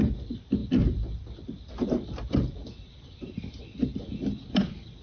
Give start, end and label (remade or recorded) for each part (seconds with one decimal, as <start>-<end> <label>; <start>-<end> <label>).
0.0-5.0 remade